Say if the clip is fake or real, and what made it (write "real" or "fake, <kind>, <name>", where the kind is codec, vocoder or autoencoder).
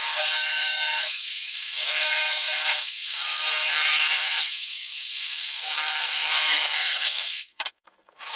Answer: fake, codec, SNAC